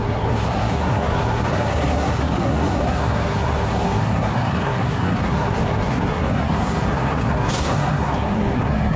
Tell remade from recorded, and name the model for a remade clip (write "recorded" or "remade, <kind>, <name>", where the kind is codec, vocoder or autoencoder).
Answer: remade, codec, SNAC